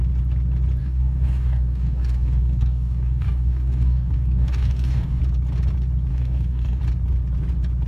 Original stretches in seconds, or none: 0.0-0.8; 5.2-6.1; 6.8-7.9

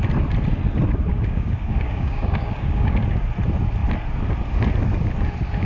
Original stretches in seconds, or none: 0.0-1.1; 3.0-5.7